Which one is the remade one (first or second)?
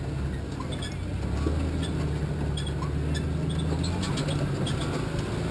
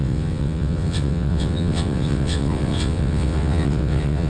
second